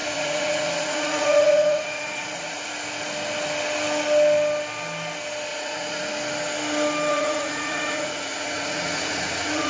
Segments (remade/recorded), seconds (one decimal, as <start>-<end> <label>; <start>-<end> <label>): 0.0-2.7 remade; 2.7-5.5 recorded; 5.5-6.1 remade; 6.1-7.1 recorded; 7.1-9.7 remade